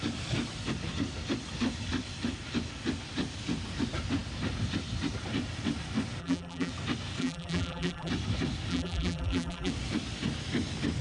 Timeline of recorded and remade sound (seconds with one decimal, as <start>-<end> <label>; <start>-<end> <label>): 0.0-6.2 recorded; 6.2-6.7 remade; 6.7-7.2 recorded; 7.2-8.1 remade; 8.1-8.7 recorded; 8.7-9.7 remade; 9.7-11.0 recorded